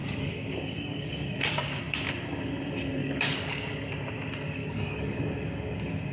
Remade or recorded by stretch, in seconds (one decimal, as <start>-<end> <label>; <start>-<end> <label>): 0.0-1.4 remade; 1.4-3.0 recorded; 3.0-3.9 remade; 3.9-4.6 recorded; 4.6-5.2 remade; 5.2-6.1 recorded